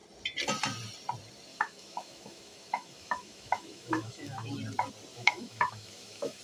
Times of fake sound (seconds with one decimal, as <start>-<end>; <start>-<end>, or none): 1.5-4.5; 5.1-6.4